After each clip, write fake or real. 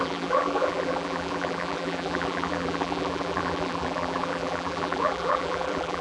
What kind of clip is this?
fake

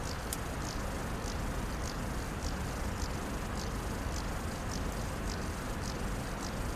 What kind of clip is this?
real